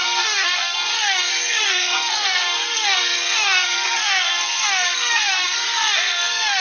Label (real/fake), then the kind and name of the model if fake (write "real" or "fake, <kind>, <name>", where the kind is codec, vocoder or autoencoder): fake, codec, SNAC